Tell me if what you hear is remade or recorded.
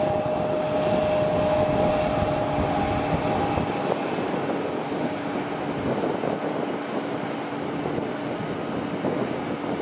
recorded